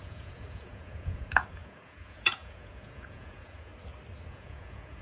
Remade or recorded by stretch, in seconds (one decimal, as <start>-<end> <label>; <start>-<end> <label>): 0.0-3.7 remade; 3.7-4.3 recorded; 4.3-5.0 remade